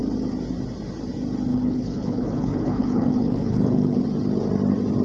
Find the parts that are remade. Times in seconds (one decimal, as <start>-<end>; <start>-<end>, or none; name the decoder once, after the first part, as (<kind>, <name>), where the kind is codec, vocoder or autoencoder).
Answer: 1.5-4.0 (codec, HILCodec)